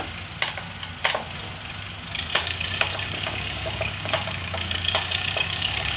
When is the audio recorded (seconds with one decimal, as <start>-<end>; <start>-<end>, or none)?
0.0-2.3